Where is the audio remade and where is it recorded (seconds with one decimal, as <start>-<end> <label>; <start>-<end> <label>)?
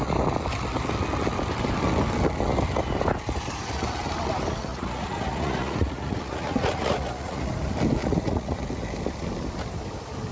0.0-4.7 recorded; 4.7-7.5 remade; 7.5-8.0 recorded; 8.0-8.6 remade; 8.6-10.3 recorded